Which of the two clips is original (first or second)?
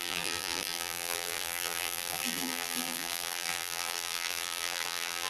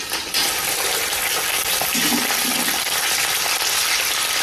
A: second